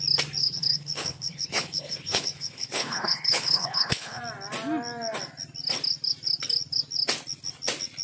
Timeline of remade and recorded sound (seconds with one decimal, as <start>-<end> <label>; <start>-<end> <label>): 0.0-0.4 recorded; 0.4-4.2 remade; 4.2-8.0 recorded